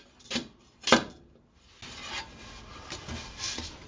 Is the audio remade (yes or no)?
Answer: no